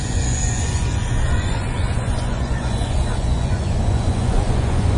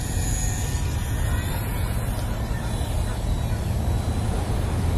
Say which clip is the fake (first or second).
first